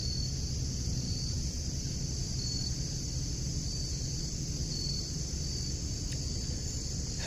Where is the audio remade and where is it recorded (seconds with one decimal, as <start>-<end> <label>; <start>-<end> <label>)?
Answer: 0.0-2.1 recorded; 2.1-2.8 remade; 2.8-7.3 recorded